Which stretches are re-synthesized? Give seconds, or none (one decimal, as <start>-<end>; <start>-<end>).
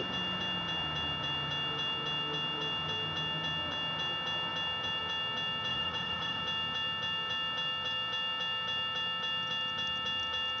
5.7-6.4